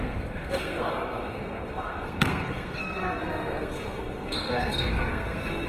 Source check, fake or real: fake